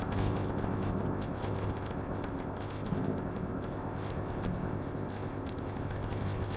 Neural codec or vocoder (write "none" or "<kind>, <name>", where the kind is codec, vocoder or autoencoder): codec, ZipCodec